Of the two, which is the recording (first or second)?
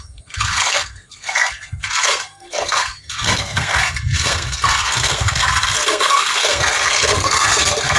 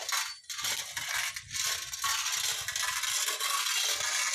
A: second